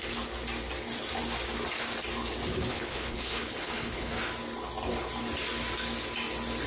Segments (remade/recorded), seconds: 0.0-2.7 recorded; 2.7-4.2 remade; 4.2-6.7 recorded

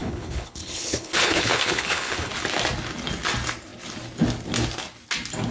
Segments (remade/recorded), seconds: 0.0-2.3 remade; 2.3-5.5 recorded

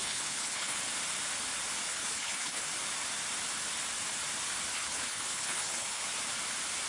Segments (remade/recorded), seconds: 0.0-0.8 remade; 0.8-1.9 recorded; 1.9-2.7 remade; 2.7-4.7 recorded; 4.7-6.0 remade; 6.0-6.9 recorded

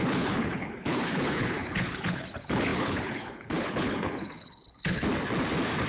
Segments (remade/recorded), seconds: 0.0-5.1 remade; 5.1-5.9 recorded